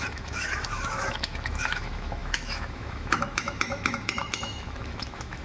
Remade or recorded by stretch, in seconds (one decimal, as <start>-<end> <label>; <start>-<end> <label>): 0.0-5.4 remade